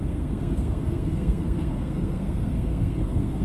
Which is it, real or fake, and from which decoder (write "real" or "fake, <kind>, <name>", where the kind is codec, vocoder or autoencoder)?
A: fake, codec, SNAC